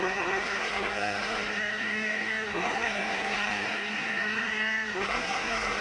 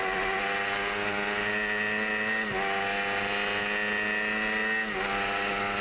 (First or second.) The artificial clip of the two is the first